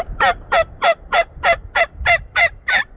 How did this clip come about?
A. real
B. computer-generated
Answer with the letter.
A